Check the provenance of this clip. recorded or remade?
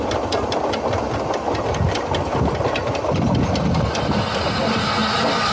recorded